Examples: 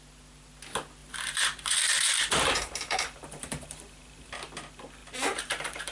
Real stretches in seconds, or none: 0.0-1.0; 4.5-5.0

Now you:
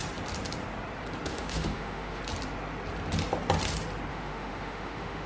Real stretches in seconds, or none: 0.0-1.3; 2.2-4.1